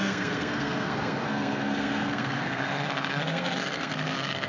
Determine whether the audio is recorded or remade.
remade